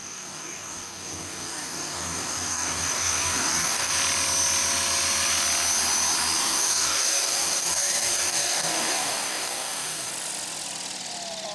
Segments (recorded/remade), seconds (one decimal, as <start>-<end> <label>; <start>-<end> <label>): 0.0-3.9 remade; 3.9-6.4 recorded; 6.4-10.1 remade; 10.1-11.5 recorded